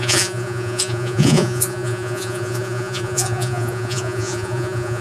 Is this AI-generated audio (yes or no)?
yes